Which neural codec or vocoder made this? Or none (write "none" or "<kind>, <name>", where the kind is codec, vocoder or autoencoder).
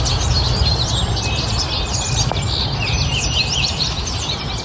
none